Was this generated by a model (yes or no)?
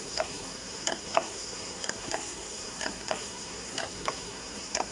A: yes